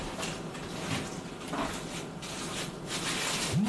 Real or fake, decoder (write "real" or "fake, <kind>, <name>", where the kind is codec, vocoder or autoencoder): real